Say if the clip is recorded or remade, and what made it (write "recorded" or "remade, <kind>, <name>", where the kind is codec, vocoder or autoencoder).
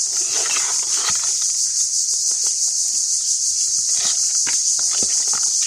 recorded